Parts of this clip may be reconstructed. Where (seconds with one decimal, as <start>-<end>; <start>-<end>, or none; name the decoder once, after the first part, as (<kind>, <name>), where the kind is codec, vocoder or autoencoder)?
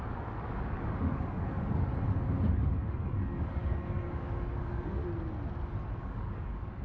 0.0-1.9 (codec, DAC); 2.5-5.0; 6.0-6.8